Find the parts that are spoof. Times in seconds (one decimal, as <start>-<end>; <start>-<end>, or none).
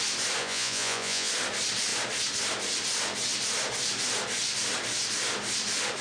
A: 0.4-1.3